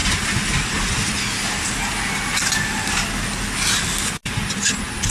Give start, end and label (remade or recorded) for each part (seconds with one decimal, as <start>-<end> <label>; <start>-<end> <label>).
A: 0.0-5.1 recorded